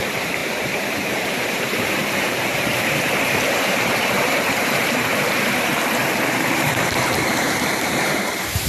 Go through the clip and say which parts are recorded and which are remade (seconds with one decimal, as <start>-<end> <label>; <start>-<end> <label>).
0.0-5.1 remade; 5.1-7.3 recorded; 7.3-8.7 remade